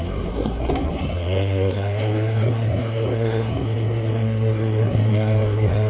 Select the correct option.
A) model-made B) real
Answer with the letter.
A